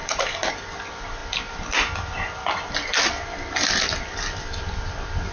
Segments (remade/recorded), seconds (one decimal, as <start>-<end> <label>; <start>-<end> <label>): 0.0-0.5 remade; 0.5-5.3 recorded